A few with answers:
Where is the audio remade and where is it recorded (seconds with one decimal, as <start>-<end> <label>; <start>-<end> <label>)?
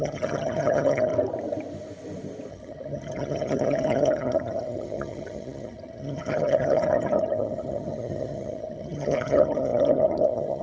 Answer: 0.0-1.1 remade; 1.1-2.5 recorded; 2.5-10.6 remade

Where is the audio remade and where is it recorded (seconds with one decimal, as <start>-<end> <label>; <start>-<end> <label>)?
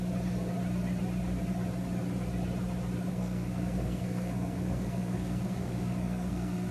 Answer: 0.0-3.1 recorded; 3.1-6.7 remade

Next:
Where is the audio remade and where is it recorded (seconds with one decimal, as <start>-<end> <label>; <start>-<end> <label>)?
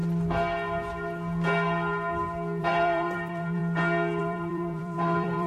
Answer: 0.0-2.6 recorded; 2.6-3.6 remade; 3.6-4.2 recorded; 4.2-5.5 remade